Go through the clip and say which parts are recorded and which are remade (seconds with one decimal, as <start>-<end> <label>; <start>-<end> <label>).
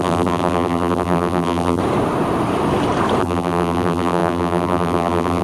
0.0-1.8 remade; 1.8-3.2 recorded; 3.2-5.4 remade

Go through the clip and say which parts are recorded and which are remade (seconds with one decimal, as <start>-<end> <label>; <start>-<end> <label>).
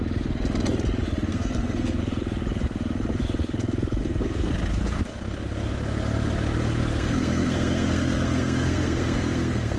0.0-1.3 recorded; 1.3-2.0 remade; 2.0-4.0 recorded; 4.0-4.5 remade; 4.5-6.9 recorded; 6.9-9.8 remade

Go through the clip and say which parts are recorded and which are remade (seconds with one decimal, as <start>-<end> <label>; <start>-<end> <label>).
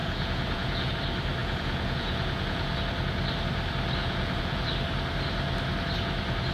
0.0-0.9 remade; 0.9-1.4 recorded; 1.4-2.8 remade; 2.8-4.0 recorded; 4.0-4.6 remade; 4.6-6.5 recorded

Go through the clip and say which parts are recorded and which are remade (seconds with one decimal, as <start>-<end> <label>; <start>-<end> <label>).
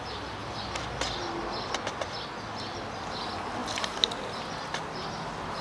0.0-5.6 recorded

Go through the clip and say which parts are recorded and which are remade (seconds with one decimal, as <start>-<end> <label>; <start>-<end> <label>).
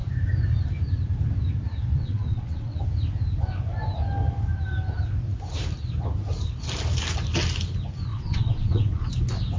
0.0-1.9 recorded; 1.9-2.8 remade; 2.8-8.1 recorded; 8.1-9.1 remade; 9.1-9.6 recorded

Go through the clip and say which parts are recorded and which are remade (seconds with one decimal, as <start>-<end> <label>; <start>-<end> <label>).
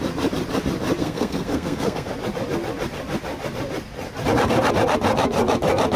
0.0-1.0 recorded; 1.0-2.1 remade; 2.1-6.0 recorded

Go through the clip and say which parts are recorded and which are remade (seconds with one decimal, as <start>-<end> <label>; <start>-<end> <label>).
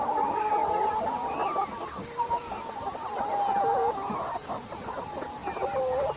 0.0-6.2 recorded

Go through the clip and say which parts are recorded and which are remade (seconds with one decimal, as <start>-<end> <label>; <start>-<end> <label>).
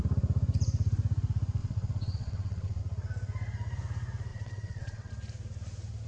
0.0-1.6 recorded; 1.6-2.8 remade; 2.8-4.3 recorded; 4.3-5.1 remade; 5.1-6.1 recorded